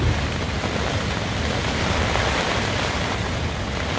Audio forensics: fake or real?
real